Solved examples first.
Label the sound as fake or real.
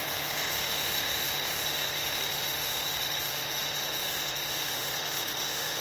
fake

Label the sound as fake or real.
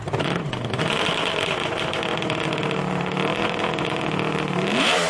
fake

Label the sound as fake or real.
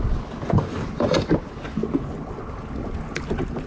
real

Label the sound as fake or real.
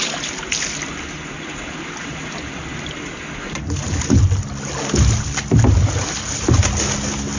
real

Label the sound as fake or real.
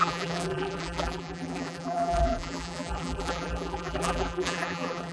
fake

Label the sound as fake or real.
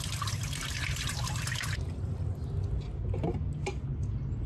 real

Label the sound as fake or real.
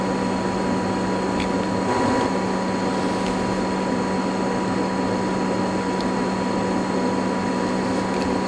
real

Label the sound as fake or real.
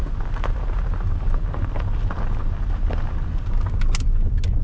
real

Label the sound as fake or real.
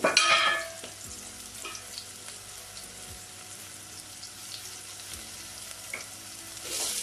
real